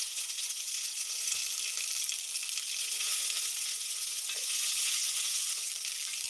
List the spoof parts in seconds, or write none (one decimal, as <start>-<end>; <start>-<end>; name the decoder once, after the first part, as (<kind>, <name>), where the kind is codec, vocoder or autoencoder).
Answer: 0.0-1.4 (vocoder, Vocos); 2.8-5.7